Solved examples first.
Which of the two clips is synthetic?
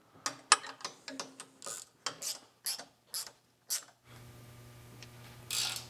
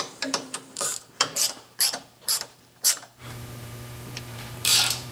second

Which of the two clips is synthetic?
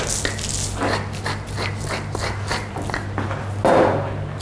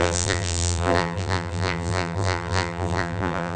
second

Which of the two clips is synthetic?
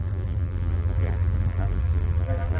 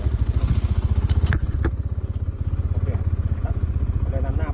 first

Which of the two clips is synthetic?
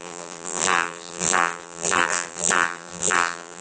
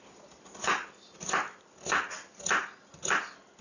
first